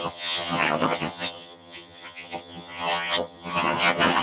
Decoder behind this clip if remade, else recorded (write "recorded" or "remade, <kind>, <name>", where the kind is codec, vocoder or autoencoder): remade, vocoder, HiFi-GAN